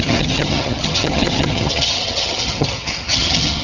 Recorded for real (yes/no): no